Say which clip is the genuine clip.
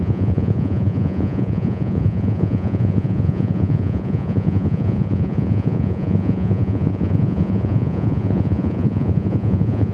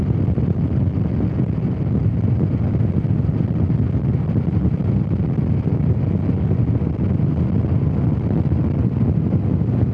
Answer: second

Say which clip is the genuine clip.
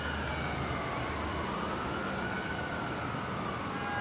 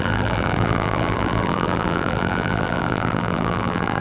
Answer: first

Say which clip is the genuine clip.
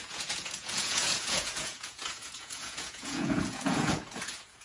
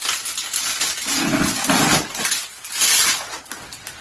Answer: second